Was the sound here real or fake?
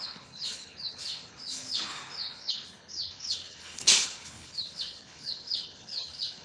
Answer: fake